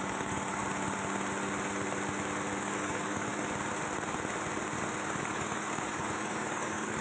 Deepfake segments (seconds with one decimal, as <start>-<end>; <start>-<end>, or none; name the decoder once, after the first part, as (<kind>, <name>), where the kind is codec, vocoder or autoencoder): 0.0-0.6 (codec, DAC); 2.6-3.3; 5.2-7.0